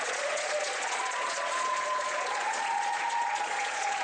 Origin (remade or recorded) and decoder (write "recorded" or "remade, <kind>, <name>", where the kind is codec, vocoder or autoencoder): remade, vocoder, Vocos